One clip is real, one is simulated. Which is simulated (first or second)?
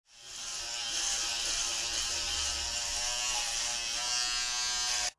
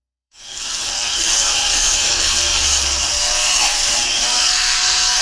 second